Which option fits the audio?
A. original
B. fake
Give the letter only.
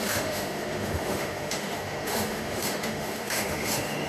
B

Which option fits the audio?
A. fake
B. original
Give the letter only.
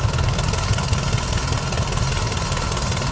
B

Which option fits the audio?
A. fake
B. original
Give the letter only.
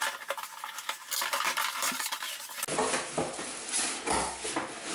B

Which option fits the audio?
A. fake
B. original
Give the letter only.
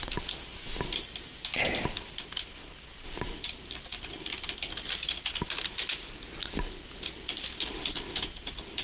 B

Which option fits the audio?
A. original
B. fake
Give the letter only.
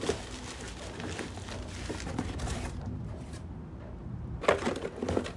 B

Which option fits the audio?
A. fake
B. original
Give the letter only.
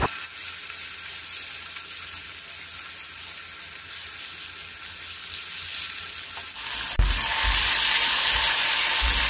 B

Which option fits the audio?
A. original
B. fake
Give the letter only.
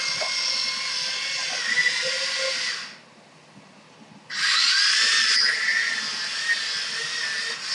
A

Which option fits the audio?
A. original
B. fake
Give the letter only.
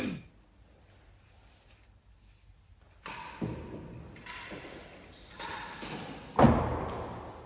A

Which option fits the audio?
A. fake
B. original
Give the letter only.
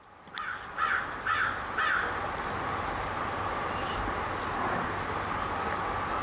B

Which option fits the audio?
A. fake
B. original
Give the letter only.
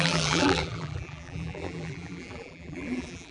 A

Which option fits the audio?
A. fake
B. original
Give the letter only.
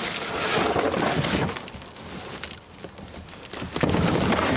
B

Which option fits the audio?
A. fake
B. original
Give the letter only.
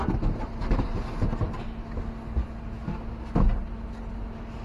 B